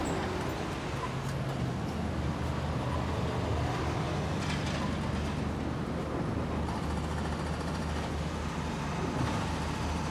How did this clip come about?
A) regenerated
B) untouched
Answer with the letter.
B